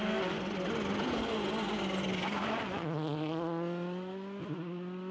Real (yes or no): yes